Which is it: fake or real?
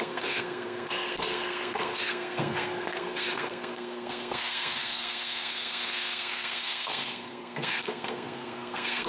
fake